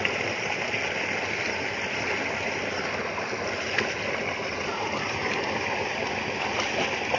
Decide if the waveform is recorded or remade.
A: recorded